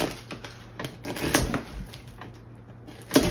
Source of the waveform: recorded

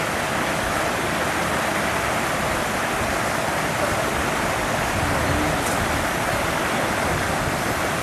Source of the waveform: recorded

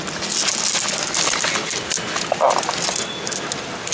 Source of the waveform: recorded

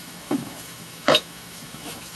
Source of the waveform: remade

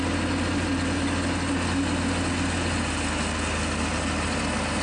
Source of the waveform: recorded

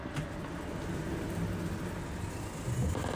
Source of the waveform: recorded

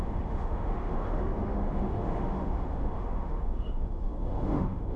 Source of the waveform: remade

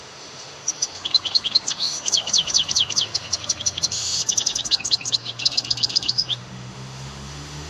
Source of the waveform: remade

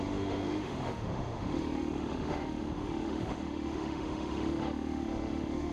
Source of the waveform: remade